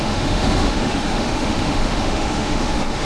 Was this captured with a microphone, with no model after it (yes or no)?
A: no